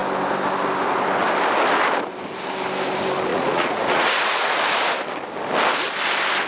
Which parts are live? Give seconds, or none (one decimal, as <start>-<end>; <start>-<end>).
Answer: 0.0-3.3; 4.6-6.5